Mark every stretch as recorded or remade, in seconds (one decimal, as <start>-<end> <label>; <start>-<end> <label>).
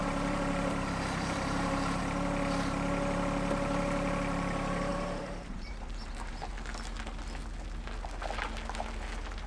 0.0-2.0 remade; 2.0-4.9 recorded; 4.9-6.5 remade; 6.5-9.5 recorded